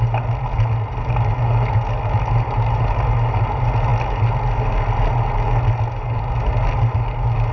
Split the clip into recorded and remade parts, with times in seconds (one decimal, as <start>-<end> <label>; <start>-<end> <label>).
0.0-7.5 recorded